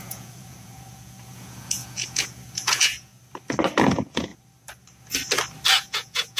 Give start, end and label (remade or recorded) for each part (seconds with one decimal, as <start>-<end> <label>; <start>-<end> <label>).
0.0-3.1 remade; 3.1-3.8 recorded; 3.8-4.3 remade; 4.3-5.7 recorded; 5.7-6.4 remade